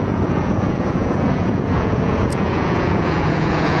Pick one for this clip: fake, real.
fake